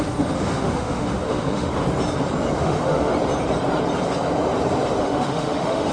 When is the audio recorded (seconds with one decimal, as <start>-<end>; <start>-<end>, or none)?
1.7-2.6; 3.1-5.0